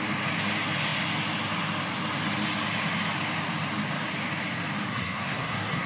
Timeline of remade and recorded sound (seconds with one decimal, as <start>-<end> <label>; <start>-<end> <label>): 0.0-4.9 recorded; 4.9-5.9 remade